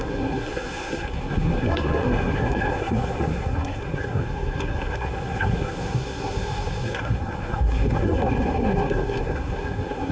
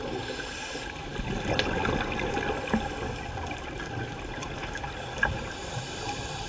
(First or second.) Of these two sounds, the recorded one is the second